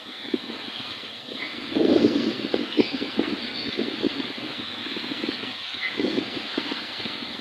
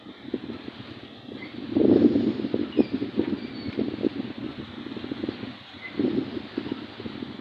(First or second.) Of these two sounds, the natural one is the second